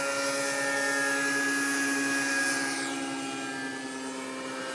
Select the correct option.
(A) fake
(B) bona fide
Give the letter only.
B